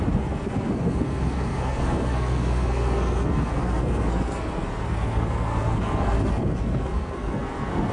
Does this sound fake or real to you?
fake